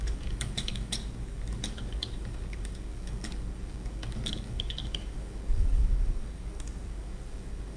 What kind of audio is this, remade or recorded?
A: remade